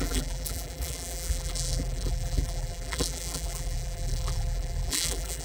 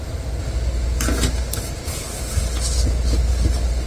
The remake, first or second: first